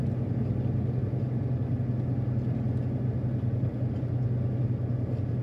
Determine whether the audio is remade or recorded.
recorded